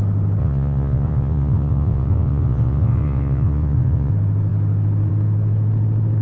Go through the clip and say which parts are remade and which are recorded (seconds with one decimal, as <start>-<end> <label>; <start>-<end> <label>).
0.0-0.4 recorded; 0.4-4.1 remade; 4.1-6.2 recorded